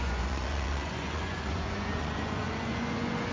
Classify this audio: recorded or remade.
remade